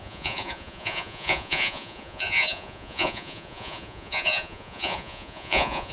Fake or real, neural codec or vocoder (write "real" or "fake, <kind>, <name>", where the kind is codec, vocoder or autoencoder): fake, vocoder, Vocos